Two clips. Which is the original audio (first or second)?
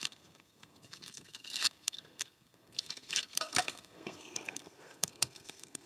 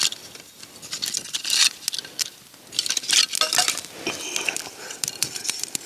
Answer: second